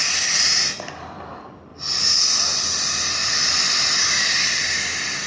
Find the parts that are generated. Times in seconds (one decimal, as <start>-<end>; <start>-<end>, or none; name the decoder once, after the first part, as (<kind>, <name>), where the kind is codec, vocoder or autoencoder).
1.7-2.2 (vocoder, BigVGAN v2); 3.2-5.3